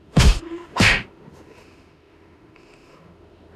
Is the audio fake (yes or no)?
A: yes